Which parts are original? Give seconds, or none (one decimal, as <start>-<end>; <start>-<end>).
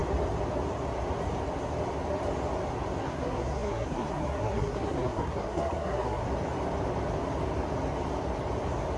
0.0-3.0; 6.2-9.0